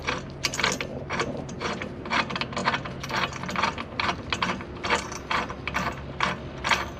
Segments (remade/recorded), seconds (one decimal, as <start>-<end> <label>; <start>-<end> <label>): 0.0-0.9 recorded; 0.9-2.0 remade; 2.0-7.0 recorded